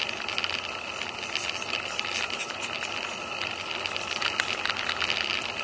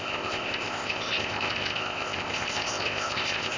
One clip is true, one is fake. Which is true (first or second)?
first